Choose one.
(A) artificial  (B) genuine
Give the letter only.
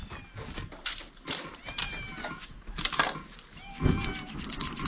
B